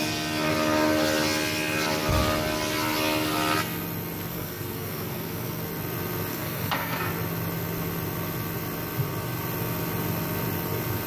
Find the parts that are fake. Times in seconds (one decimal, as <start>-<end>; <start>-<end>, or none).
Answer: 4.3-5.6; 6.3-7.1